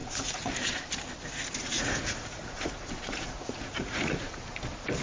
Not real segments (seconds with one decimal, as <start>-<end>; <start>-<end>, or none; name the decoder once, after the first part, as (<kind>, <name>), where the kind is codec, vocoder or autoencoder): 0.0-0.9 (vocoder, Vocos); 1.6-4.4